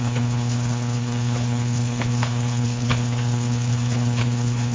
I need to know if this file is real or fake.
fake